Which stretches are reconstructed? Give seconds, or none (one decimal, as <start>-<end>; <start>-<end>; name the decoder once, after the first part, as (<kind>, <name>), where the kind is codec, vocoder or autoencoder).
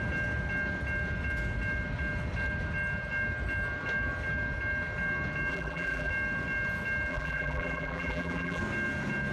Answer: 5.5-6.1 (vocoder, BigVGAN v2); 7.1-8.6